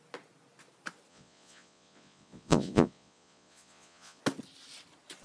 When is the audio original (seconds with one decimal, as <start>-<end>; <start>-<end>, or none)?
0.0-1.1; 4.2-5.2